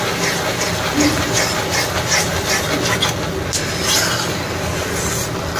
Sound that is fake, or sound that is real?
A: real